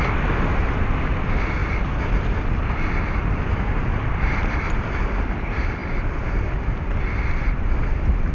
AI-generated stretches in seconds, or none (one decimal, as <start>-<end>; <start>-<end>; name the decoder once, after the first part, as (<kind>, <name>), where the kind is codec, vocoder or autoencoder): 0.0-5.8 (vocoder, BigVGAN v2); 7.7-8.3